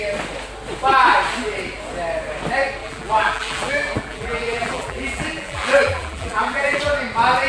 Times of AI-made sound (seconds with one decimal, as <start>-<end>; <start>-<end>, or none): 2.8-6.8